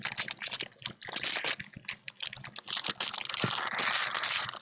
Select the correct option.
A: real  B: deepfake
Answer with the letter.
A